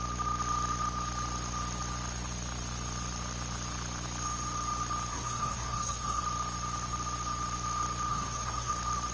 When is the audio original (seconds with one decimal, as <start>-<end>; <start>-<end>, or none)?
0.0-5.1; 6.2-8.1; 8.7-9.1